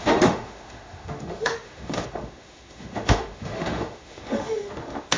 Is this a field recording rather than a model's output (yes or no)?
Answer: no